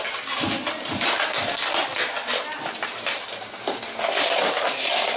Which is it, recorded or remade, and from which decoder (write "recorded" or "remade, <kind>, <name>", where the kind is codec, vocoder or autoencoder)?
recorded